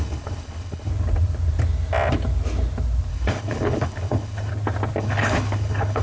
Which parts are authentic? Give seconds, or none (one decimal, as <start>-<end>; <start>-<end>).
0.9-3.1; 4.5-5.0